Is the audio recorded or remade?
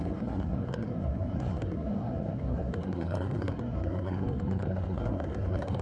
remade